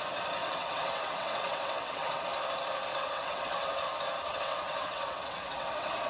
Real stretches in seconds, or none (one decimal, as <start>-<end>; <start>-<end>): 0.0-0.4; 2.2-2.9; 3.8-4.3